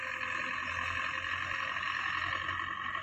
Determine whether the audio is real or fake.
real